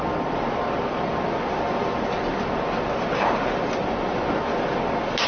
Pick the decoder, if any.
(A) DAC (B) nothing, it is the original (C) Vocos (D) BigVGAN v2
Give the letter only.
B